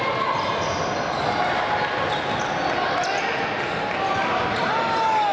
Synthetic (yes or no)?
no